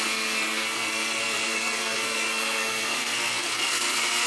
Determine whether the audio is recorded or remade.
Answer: remade